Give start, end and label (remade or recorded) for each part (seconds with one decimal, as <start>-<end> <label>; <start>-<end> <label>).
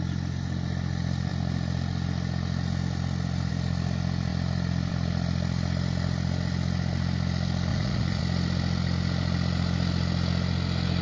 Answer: 0.0-7.7 recorded; 7.7-8.2 remade; 8.2-11.0 recorded